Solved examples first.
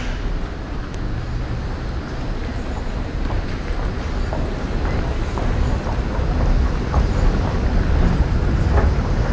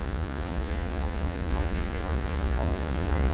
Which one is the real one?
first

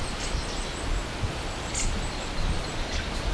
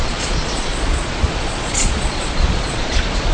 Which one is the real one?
first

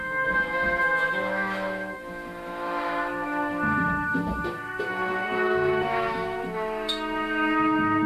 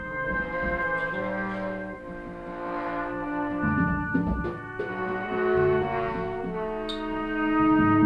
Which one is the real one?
second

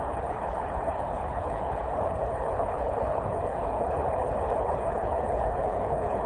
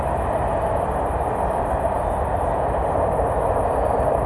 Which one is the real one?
second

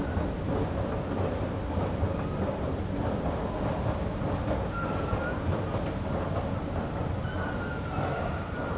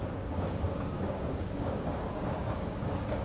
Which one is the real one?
first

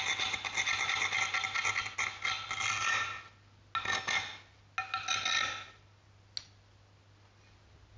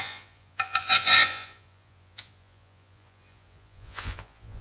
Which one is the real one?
first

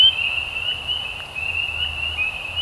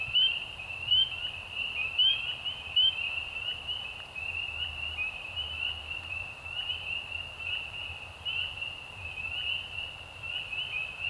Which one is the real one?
first